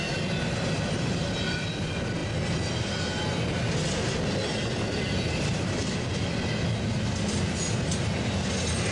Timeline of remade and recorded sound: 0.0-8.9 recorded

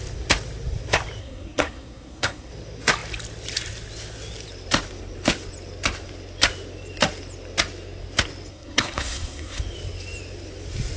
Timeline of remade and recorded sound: 0.0-1.2 recorded; 1.2-2.5 remade; 2.5-8.5 recorded; 8.5-9.6 remade; 9.6-11.0 recorded

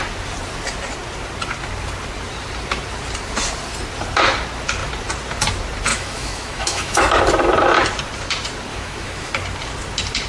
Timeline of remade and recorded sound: 0.0-5.9 recorded; 5.9-7.2 remade; 7.2-8.7 recorded; 8.7-9.3 remade; 9.3-10.3 recorded

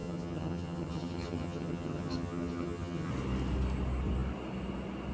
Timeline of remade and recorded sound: 0.0-3.1 remade; 3.1-5.1 recorded

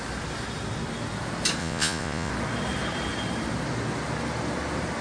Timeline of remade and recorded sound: 0.0-1.6 recorded; 1.6-2.3 remade; 2.3-5.0 recorded

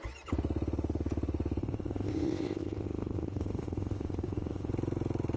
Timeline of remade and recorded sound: 0.0-1.6 recorded; 1.6-4.7 remade; 4.7-5.4 recorded

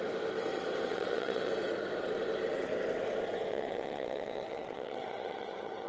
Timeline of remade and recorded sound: 0.0-0.9 recorded; 0.9-1.5 remade; 1.5-3.5 recorded; 3.5-5.9 remade

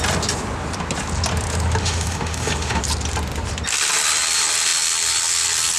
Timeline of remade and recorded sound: 0.0-1.8 recorded; 1.8-2.8 remade; 2.8-5.8 recorded